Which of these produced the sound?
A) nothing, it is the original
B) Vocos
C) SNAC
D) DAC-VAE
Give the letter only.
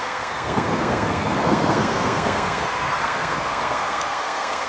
C